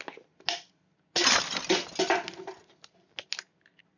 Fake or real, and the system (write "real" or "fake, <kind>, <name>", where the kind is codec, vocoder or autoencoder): real